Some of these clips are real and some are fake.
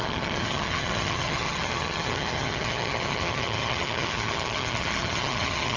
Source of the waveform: fake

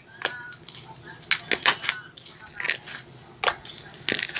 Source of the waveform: real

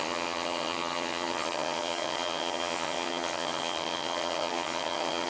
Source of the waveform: fake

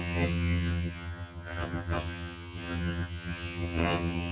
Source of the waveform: fake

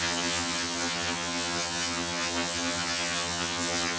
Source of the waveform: fake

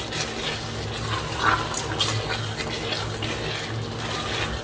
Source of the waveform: real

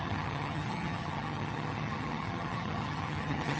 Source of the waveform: fake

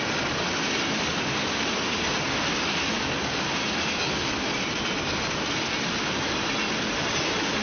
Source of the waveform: real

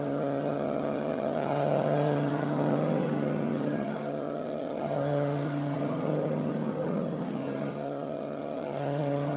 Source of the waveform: fake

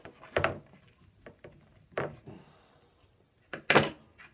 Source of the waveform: real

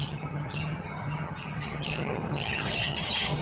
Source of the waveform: fake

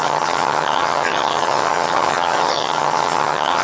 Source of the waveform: fake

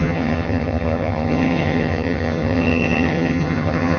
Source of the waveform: fake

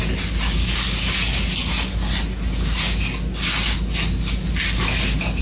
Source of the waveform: real